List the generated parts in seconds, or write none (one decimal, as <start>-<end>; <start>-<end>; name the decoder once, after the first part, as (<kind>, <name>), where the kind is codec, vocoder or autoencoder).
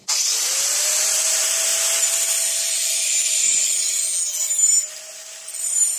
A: 0.0-1.7 (vocoder, BigVGAN v2); 2.6-4.1; 5.6-6.0